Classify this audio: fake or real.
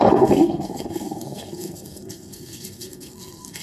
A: fake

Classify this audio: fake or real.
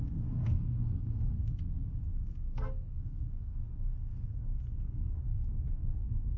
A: fake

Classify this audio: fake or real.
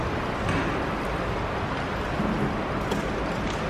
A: real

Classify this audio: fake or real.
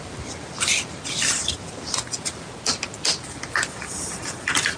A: real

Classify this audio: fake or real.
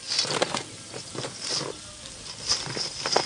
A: real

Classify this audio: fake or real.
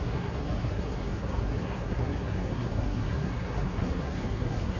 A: fake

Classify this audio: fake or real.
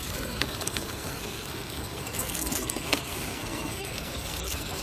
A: fake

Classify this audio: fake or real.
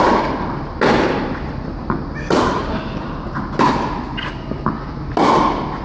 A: real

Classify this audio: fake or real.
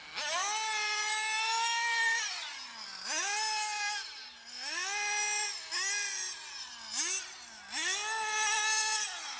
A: real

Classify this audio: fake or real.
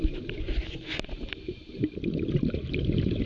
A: real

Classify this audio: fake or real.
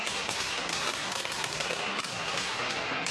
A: fake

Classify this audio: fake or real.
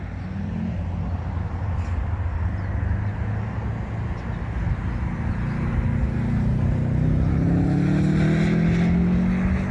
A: real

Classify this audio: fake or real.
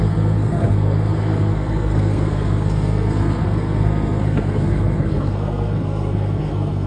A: fake